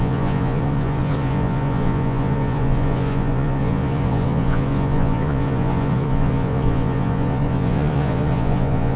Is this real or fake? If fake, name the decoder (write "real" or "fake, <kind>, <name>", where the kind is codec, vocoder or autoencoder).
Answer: fake, vocoder, Vocos